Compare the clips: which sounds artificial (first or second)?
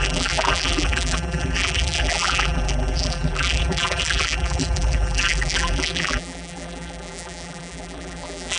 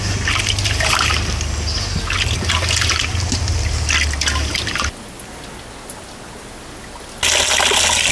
first